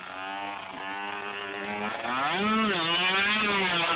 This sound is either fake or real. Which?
real